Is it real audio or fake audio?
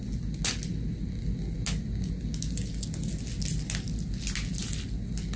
real